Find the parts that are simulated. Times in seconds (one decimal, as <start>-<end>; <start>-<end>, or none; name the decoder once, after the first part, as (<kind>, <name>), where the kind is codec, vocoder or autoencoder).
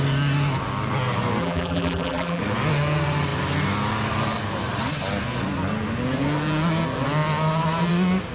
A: 1.4-2.4 (vocoder, BigVGAN v2)